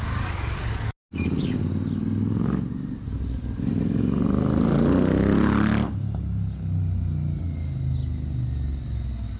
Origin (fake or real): real